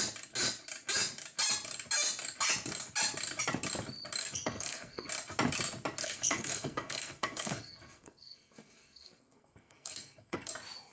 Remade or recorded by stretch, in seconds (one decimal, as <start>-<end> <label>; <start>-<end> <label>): 0.0-4.2 recorded; 4.2-5.1 remade; 5.1-6.0 recorded; 6.0-10.5 remade; 10.5-10.9 recorded